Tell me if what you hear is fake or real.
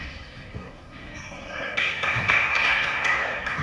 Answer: fake